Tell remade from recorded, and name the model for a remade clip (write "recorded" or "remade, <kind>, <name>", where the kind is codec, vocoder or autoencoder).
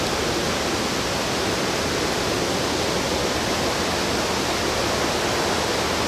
recorded